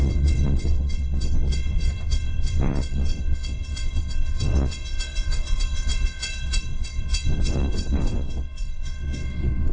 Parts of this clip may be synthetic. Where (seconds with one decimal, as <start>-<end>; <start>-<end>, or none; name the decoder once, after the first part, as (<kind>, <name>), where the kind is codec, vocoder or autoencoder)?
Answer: 0.0-9.7 (vocoder, WaveNeXt)